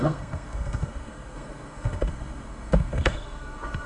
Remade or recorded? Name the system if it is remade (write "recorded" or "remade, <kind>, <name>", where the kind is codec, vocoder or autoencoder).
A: remade, codec, SNAC